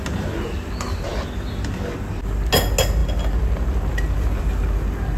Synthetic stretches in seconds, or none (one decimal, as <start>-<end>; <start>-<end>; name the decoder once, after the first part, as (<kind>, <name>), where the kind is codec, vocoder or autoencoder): none